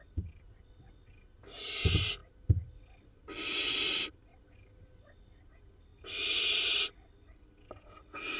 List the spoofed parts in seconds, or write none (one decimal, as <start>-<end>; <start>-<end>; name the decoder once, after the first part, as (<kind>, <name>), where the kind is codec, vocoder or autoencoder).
none